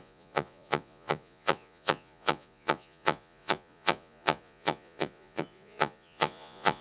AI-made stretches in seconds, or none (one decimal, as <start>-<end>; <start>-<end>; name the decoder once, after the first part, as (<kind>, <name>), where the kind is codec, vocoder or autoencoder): 0.0-6.8 (vocoder, Vocos)